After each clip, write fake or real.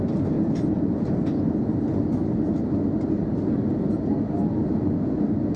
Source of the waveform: real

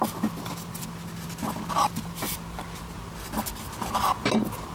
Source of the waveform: real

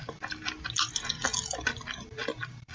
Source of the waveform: real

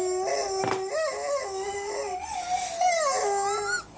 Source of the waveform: real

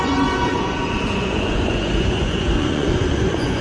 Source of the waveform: fake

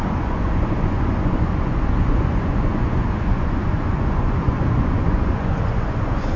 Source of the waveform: fake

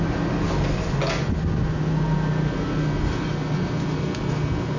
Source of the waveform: real